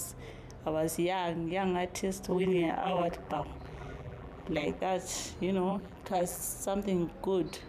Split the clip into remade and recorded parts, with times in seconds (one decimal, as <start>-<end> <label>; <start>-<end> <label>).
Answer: 0.0-2.3 recorded; 2.3-4.8 remade; 4.8-5.7 recorded; 5.7-6.4 remade; 6.4-7.7 recorded